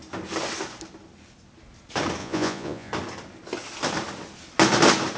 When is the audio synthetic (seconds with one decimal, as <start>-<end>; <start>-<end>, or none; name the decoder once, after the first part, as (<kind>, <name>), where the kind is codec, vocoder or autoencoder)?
2.2-2.9 (vocoder, Vocos)